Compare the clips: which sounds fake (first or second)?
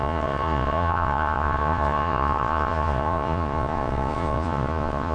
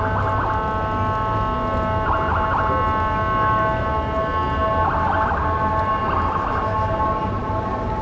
first